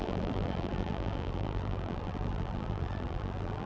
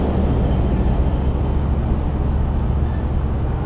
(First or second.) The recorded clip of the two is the second